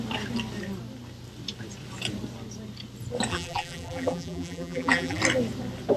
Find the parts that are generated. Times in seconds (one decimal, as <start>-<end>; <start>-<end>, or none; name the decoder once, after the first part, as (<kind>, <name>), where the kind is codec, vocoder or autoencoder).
3.3-5.2 (vocoder, BigVGAN v2)